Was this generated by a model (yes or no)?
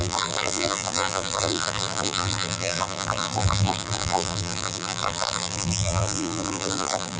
yes